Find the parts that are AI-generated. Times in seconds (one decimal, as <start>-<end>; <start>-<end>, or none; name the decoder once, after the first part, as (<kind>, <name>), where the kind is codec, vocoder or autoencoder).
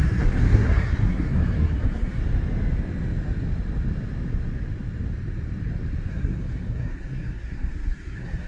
0.0-2.2 (codec, SNAC); 6.1-8.5